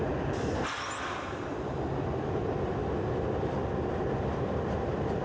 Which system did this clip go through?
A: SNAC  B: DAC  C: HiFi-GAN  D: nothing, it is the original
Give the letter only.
D